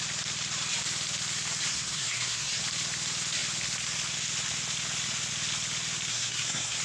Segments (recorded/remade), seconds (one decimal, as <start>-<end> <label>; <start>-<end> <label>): 0.0-1.7 recorded; 1.7-2.6 remade; 2.6-6.1 recorded; 6.1-6.8 remade